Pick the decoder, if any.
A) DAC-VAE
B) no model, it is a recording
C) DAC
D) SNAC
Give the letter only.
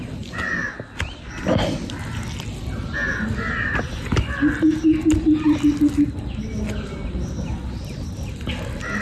B